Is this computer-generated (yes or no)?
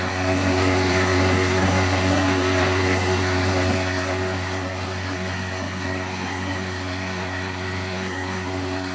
yes